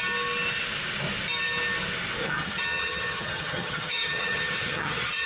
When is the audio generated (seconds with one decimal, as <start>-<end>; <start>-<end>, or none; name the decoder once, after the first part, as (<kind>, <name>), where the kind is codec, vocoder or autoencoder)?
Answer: 2.2-5.3 (vocoder, HiFi-GAN)